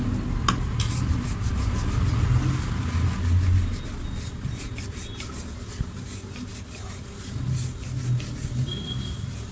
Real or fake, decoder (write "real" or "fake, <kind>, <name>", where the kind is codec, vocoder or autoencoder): real